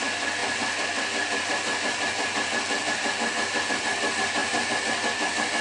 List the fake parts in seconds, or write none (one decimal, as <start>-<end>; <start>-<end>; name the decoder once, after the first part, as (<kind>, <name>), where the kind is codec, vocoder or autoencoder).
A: none